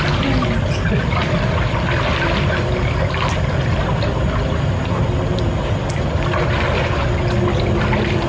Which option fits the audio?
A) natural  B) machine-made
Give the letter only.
A